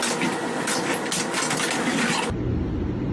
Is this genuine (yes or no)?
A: yes